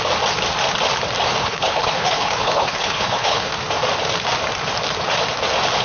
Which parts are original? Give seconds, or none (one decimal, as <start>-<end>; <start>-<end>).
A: 0.0-1.4; 3.5-5.8